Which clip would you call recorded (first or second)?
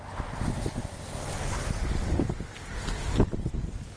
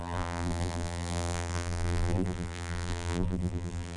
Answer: first